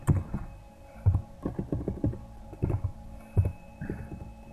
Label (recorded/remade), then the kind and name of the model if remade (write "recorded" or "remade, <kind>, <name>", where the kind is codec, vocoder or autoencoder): recorded